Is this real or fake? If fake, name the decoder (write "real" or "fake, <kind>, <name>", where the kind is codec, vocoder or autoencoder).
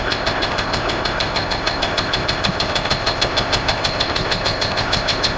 fake, codec, ZipCodec